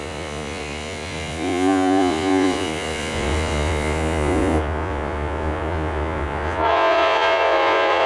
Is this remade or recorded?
remade